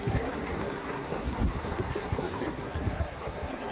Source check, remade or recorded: remade